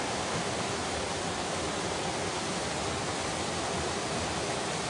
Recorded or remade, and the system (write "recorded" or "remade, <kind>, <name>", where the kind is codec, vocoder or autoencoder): recorded